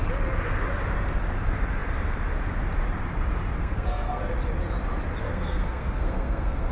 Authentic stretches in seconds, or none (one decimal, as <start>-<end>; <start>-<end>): 0.0-3.6; 4.2-5.2